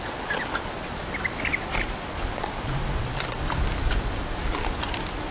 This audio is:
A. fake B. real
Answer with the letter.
B